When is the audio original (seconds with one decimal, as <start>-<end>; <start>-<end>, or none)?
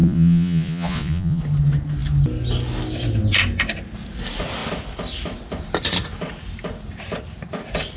1.4-8.0